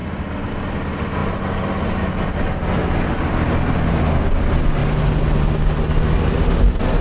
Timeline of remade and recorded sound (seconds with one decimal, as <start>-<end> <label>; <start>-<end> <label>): 0.0-7.0 recorded